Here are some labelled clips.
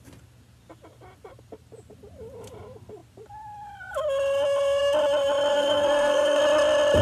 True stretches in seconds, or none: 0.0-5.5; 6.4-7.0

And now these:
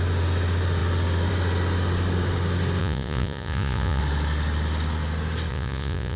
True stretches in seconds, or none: 0.0-2.8; 4.0-5.5

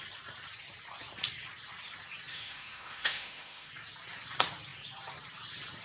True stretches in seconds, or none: 0.0-2.3; 3.7-5.8

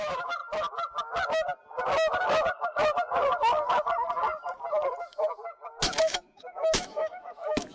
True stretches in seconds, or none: 0.4-5.0; 5.4-6.0

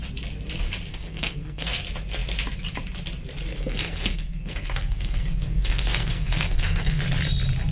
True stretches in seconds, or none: 0.0-0.9; 1.8-3.5; 7.0-7.7

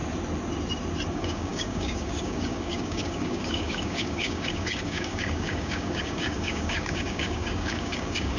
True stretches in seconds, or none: 0.0-1.1